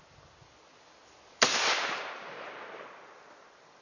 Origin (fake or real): real